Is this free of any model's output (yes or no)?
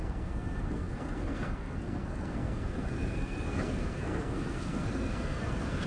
no